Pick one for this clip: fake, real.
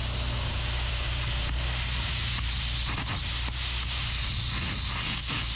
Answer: real